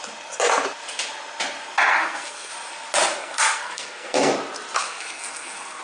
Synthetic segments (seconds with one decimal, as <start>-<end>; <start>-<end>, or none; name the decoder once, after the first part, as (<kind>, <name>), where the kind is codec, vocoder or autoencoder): 1.9-2.5 (codec, SNAC); 3.2-4.3; 4.8-5.8